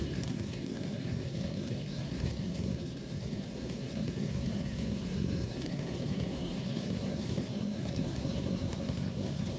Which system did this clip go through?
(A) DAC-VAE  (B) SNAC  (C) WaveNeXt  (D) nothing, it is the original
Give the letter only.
B